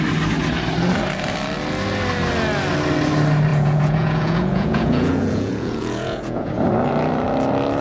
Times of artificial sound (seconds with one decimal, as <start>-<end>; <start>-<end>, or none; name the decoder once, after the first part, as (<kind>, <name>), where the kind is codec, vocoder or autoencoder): 3.5-6.5 (vocoder, Vocos)